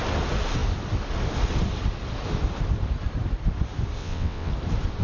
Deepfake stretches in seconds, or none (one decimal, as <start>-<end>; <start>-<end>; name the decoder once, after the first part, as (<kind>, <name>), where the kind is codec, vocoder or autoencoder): 4.0-4.5 (vocoder, WaveNeXt)